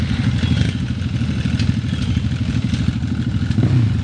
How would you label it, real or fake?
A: real